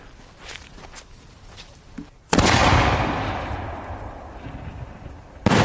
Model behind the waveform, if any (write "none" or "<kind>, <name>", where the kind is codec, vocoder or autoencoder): none